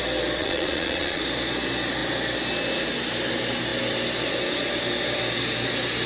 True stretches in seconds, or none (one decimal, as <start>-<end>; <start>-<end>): 0.0-0.4; 1.2-6.1